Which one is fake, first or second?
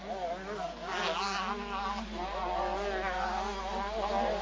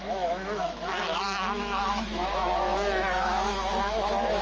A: second